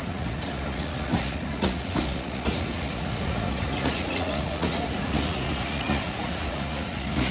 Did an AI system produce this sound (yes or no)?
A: yes